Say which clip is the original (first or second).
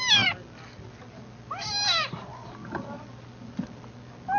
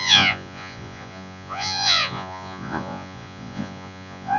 first